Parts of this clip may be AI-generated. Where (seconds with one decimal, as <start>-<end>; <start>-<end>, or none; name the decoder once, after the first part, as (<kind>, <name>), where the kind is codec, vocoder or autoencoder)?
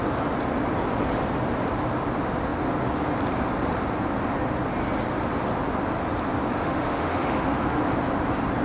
6.6-7.8 (autoencoder, DAC-VAE)